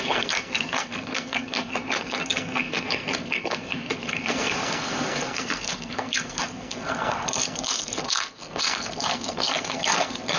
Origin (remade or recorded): remade